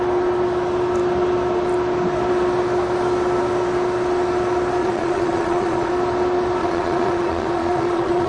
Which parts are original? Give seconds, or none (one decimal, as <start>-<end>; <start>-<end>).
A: 0.0-4.8; 5.9-6.6